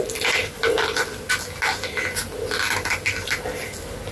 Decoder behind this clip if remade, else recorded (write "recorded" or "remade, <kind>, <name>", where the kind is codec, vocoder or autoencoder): recorded